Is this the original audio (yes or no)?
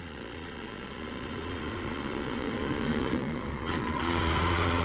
no